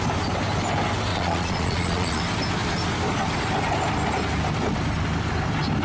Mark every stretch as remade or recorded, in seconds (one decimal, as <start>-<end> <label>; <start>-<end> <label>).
0.0-1.1 recorded; 1.1-2.2 remade; 2.2-5.8 recorded